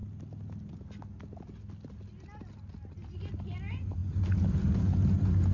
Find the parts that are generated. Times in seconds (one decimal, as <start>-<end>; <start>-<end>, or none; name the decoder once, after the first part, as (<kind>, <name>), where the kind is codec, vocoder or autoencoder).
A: none